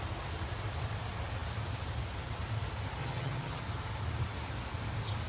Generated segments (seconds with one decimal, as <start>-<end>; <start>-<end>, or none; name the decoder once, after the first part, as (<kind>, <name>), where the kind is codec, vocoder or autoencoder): 3.0-3.6 (vocoder, HiFi-GAN)